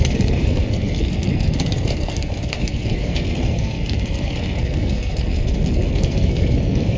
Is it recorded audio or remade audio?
remade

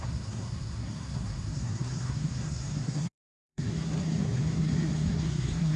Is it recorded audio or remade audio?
remade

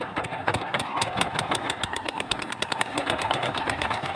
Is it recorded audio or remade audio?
remade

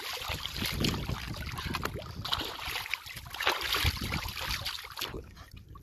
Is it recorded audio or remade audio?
recorded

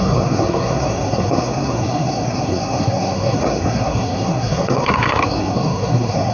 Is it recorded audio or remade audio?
remade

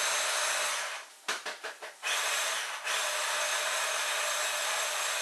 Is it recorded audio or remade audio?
recorded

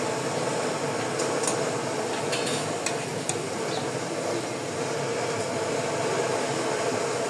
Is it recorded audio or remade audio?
recorded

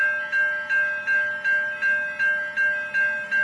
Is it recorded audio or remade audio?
recorded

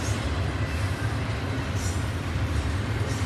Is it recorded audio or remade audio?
recorded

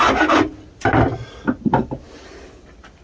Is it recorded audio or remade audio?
recorded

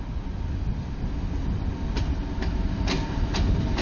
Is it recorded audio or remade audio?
recorded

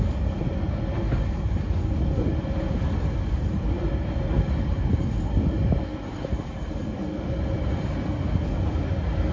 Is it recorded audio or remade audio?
recorded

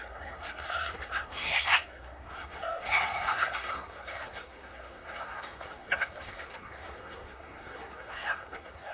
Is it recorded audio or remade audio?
remade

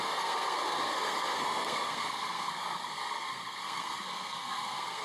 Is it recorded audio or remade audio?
remade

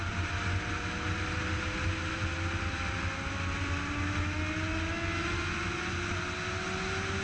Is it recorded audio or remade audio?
recorded